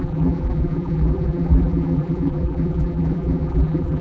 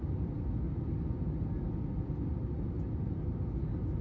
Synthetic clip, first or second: first